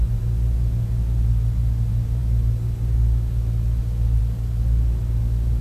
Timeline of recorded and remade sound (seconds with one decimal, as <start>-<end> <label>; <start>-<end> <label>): 0.0-5.6 recorded